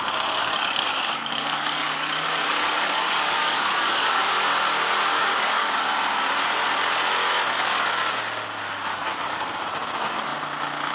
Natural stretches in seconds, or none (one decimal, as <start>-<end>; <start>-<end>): 0.0-0.4; 4.2-5.1; 5.7-8.9; 9.5-10.9